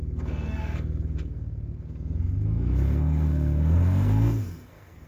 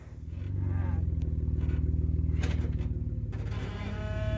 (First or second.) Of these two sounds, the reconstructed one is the first